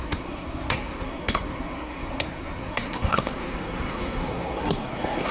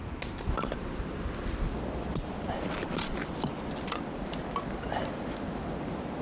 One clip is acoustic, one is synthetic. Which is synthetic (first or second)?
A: first